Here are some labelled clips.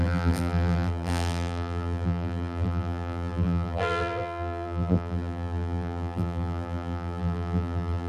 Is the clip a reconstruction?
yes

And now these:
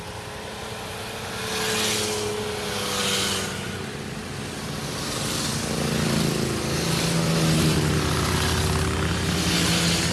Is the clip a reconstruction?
no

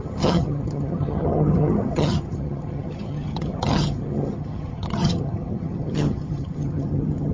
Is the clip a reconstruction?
yes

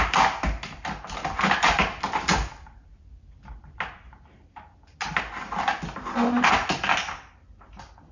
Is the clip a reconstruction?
no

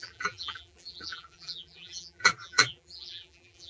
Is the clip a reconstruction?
yes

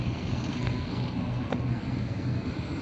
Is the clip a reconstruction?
yes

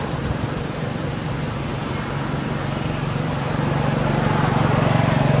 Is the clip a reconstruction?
no